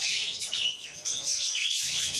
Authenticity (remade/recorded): remade